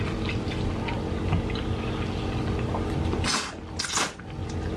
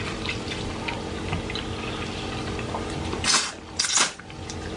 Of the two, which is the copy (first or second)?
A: second